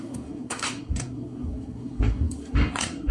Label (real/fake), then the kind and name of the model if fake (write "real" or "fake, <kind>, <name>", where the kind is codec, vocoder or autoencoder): fake, codec, SNAC